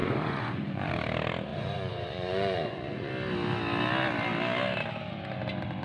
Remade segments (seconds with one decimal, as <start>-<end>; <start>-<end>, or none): 0.0-0.9; 1.5-3.1